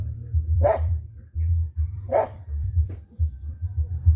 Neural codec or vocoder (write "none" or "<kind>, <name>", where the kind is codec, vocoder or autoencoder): vocoder, BigVGAN v2